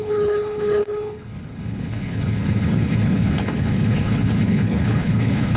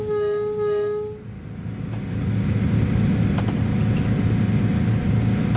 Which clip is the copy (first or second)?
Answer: first